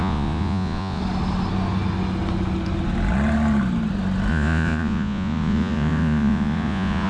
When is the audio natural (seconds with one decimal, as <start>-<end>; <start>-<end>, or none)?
1.0-4.3